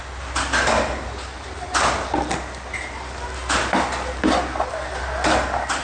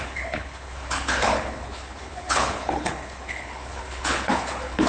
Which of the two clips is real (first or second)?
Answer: first